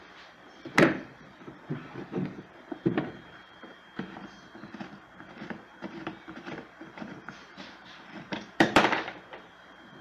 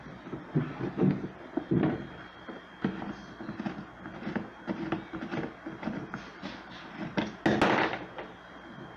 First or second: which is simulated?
first